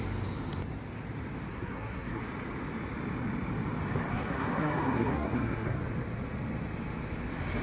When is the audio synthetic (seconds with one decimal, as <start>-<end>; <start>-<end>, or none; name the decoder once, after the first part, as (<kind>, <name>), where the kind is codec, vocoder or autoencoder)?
1.5-2.2 (codec, SNAC); 4.1-5.8